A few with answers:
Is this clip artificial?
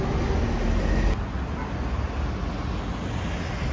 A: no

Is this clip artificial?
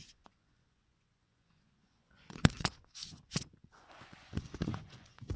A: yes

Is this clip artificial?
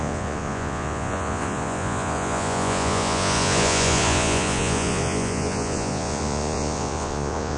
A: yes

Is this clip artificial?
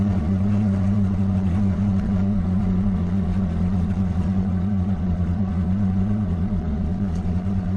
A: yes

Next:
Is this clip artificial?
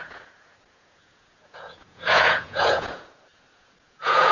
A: yes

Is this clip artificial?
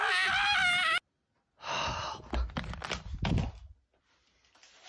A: no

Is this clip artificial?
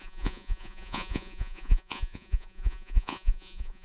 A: yes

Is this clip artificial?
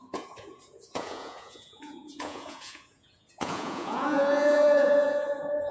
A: yes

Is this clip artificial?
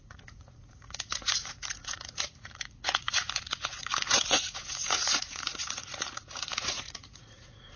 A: yes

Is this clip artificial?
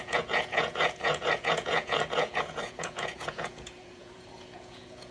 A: yes